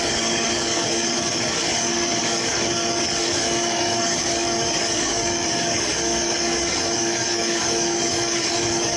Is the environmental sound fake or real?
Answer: fake